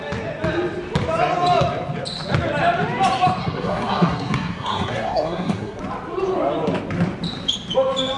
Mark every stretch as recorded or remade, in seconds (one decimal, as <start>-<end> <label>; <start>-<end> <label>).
0.0-3.4 recorded; 3.4-5.8 remade; 5.8-8.2 recorded

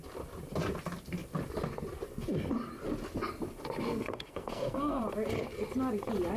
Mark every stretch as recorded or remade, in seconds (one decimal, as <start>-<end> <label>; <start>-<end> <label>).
0.0-3.9 recorded; 3.9-5.0 remade; 5.0-6.4 recorded

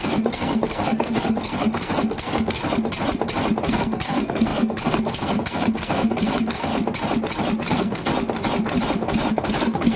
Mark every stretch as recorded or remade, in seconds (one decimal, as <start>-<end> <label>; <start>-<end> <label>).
0.0-2.6 remade; 2.6-3.7 recorded; 3.7-6.7 remade; 6.7-7.7 recorded; 7.7-8.1 remade; 8.1-9.3 recorded; 9.3-10.0 remade

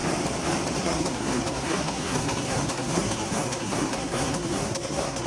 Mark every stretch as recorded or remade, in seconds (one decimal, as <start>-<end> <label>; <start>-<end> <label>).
0.0-0.8 recorded; 0.8-5.3 remade

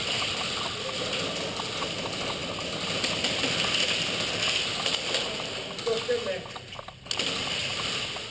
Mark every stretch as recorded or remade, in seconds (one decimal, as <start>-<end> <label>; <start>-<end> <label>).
0.0-8.3 recorded

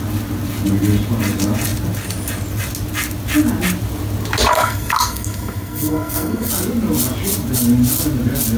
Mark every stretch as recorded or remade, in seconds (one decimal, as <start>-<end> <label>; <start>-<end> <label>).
0.0-4.5 recorded; 4.5-6.5 remade; 6.5-8.6 recorded